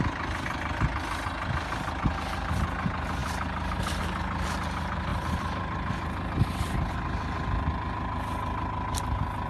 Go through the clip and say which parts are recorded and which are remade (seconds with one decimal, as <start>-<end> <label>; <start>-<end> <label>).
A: 0.0-5.1 recorded; 5.1-6.9 remade; 6.9-9.5 recorded